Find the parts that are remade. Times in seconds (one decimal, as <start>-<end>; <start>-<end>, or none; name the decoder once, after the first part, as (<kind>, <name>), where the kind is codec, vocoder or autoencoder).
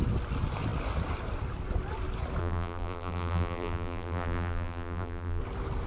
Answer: 2.4-5.4 (vocoder, BigVGAN v2)